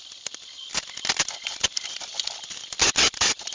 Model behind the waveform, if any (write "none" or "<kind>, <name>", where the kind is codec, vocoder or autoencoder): none